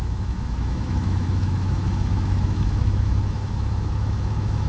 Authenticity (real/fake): fake